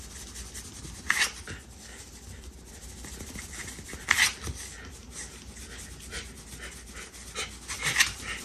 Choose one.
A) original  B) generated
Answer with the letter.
A